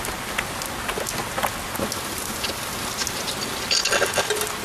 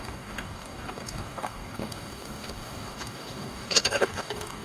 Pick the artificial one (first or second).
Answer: second